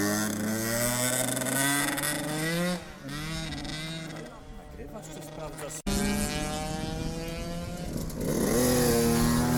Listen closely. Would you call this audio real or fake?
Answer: real